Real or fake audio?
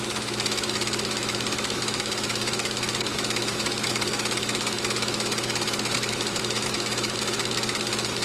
fake